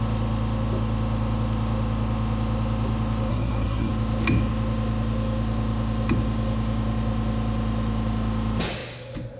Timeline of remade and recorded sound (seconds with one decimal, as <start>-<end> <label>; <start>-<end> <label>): 0.0-3.3 recorded; 3.3-3.9 remade; 3.9-9.4 recorded